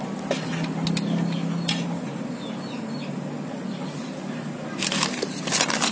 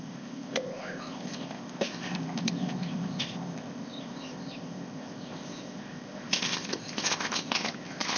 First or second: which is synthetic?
second